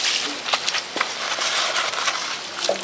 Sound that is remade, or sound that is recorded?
recorded